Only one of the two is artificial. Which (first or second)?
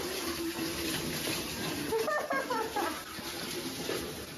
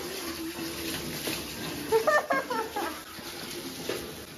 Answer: first